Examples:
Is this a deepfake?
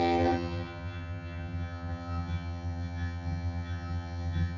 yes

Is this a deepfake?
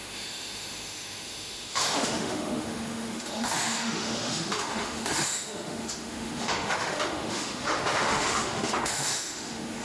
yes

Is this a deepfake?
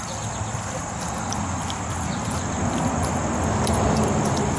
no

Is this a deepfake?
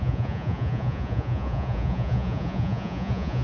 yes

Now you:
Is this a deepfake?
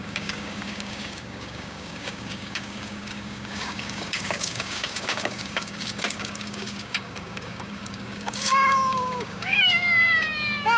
yes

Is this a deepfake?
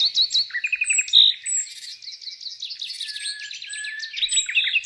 no